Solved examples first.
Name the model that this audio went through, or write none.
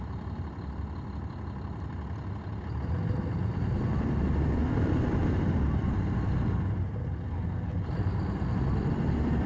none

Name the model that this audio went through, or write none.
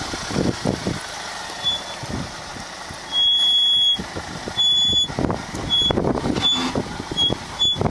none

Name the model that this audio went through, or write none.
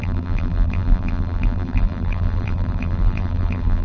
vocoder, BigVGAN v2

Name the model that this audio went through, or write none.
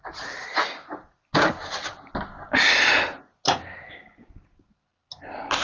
none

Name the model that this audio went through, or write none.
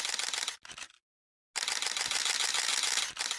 none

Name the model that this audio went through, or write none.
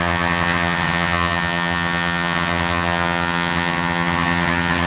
vocoder, HiFi-GAN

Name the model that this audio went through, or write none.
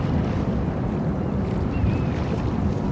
vocoder, BigVGAN v2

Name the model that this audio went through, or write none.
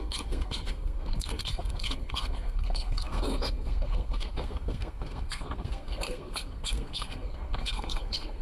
codec, SNAC